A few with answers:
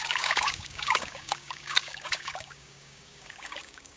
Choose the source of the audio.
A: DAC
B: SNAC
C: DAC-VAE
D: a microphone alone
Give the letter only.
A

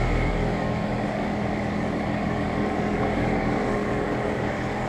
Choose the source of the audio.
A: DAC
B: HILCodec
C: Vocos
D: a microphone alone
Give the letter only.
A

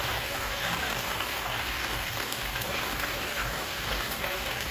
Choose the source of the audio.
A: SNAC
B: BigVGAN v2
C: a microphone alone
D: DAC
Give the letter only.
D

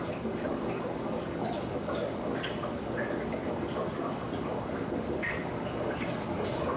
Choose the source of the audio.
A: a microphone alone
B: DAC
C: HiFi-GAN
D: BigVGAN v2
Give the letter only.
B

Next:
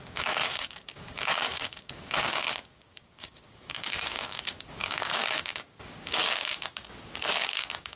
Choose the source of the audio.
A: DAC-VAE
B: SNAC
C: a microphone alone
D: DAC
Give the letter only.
D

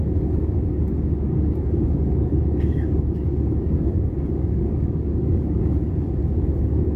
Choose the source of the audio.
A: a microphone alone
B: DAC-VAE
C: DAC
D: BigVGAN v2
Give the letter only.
C